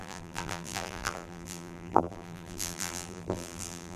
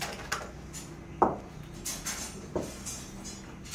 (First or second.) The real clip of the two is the second